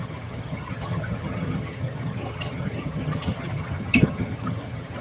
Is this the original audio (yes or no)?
no